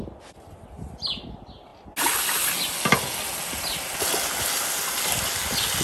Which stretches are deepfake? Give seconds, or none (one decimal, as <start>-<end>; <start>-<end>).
none